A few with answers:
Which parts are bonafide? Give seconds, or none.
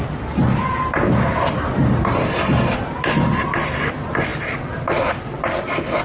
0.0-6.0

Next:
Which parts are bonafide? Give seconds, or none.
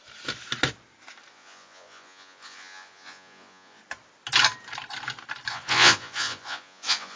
0.0-1.3; 3.8-5.5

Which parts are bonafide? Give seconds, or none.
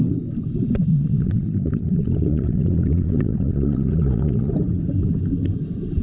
0.0-0.9; 4.5-6.0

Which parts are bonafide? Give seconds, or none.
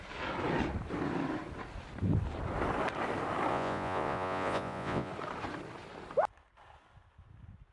0.0-3.5; 5.1-7.7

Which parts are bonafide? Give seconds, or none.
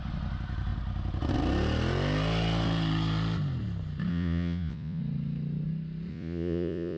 0.0-4.1; 5.0-6.1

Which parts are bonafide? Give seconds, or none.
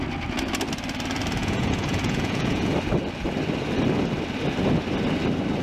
0.0-1.4; 2.7-5.6